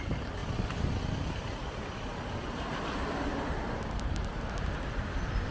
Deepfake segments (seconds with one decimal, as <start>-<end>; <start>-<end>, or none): none